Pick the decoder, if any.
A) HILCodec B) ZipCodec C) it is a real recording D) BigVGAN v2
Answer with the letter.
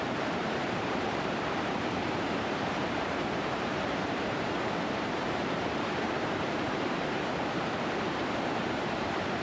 D